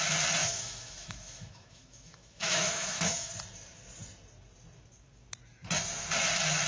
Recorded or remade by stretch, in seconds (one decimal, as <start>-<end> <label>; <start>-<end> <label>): 0.0-0.4 recorded; 0.4-3.3 remade; 3.3-6.7 recorded